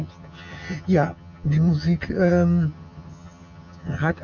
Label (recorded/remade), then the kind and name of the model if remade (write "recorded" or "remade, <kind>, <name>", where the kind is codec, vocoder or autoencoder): remade, vocoder, HiFi-GAN